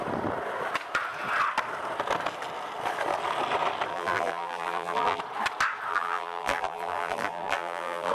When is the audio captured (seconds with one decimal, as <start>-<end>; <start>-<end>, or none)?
0.0-3.9; 5.2-5.9